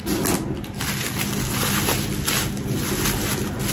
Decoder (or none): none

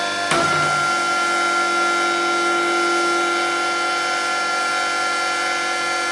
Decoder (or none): none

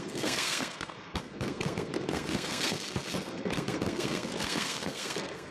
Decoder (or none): codec, SNAC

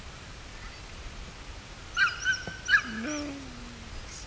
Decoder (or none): none